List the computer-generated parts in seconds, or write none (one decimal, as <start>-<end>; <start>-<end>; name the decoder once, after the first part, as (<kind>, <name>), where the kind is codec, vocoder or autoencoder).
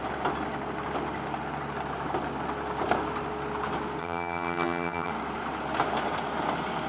4.0-5.1 (vocoder, HiFi-GAN)